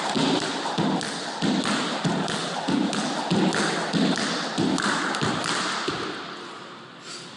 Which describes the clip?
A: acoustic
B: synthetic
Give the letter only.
A